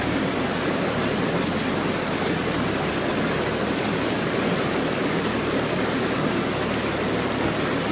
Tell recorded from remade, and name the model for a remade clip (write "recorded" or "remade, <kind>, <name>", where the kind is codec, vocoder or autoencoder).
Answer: recorded